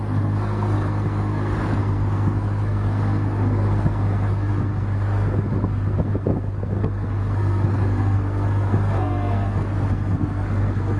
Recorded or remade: remade